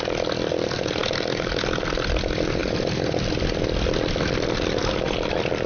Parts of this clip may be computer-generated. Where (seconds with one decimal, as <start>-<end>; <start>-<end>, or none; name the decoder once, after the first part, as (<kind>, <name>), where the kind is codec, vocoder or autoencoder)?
2.6-3.2 (vocoder, BigVGAN v2)